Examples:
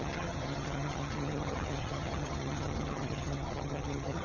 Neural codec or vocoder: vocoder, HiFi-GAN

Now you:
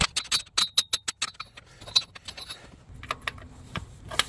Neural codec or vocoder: none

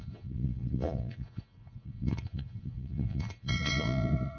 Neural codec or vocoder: vocoder, Vocos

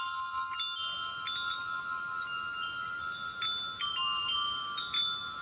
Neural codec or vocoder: none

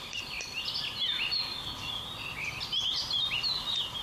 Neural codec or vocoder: none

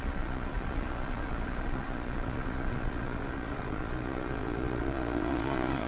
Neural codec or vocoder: vocoder, Vocos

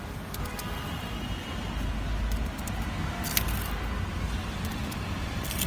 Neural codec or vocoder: none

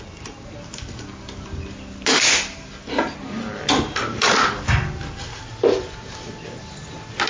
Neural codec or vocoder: none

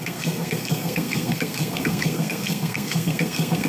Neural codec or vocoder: codec, SNAC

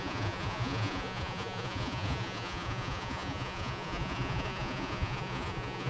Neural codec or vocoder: vocoder, Vocos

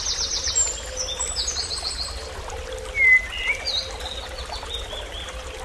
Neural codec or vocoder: none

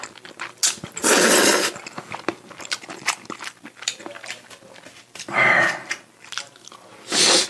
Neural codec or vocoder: none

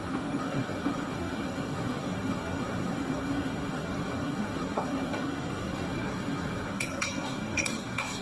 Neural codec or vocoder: codec, SNAC